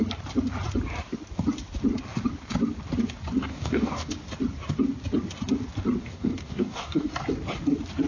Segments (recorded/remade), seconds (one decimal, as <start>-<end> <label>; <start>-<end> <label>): 0.0-3.5 recorded; 3.5-4.1 remade; 4.1-6.0 recorded; 6.0-7.1 remade; 7.1-8.1 recorded